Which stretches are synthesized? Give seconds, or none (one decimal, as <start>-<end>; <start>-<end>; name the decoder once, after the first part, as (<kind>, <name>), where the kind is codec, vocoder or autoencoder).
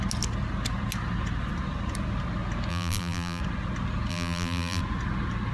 2.7-3.4 (vocoder, BigVGAN v2); 4.1-4.8